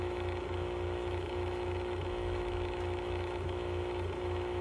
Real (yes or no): no